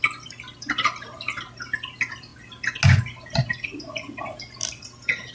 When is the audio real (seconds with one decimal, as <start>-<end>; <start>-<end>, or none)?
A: 0.0-5.3